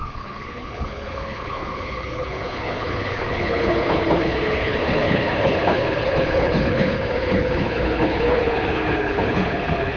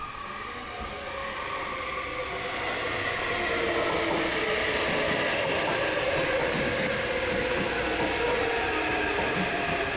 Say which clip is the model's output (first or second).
first